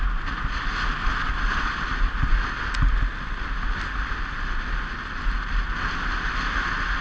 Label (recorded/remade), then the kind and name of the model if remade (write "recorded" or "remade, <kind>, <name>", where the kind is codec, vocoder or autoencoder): recorded